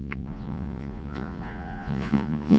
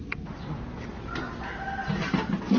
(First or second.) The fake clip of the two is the first